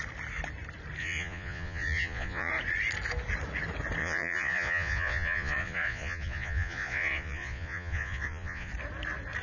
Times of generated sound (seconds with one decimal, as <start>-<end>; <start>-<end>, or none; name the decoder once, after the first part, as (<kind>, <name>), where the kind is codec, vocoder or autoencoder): 1.0-2.5 (vocoder, Vocos); 4.0-8.7